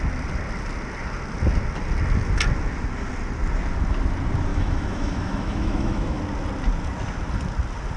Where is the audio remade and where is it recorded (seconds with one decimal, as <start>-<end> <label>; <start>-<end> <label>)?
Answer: 0.0-4.5 recorded; 4.5-6.2 remade; 6.2-8.0 recorded